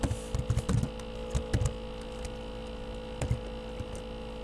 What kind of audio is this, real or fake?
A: real